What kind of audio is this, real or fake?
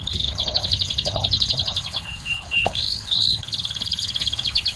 fake